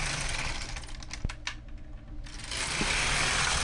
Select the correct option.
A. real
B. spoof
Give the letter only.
A